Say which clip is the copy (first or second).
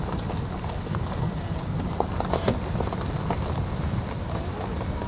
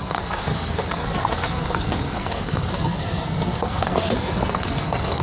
second